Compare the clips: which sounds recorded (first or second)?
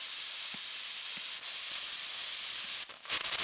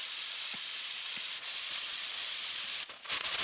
first